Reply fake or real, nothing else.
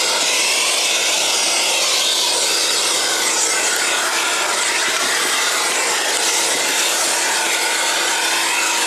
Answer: real